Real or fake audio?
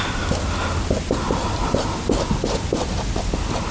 real